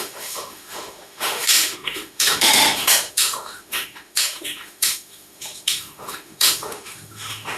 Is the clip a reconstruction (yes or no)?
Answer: yes